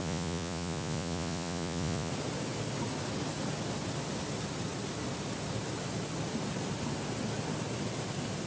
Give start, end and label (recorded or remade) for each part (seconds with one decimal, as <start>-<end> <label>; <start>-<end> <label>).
0.0-2.1 remade; 2.1-8.5 recorded